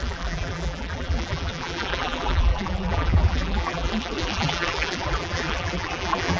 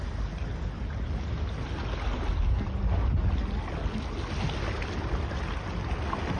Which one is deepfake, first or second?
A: first